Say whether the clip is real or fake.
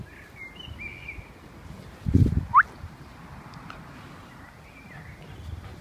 real